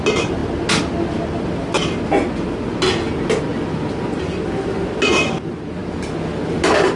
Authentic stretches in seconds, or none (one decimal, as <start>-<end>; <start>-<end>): 0.0-7.0